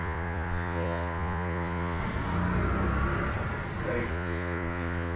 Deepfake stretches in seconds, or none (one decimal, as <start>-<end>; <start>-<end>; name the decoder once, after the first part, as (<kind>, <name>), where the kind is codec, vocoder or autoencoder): 0.0-2.0 (vocoder, Vocos); 4.1-5.2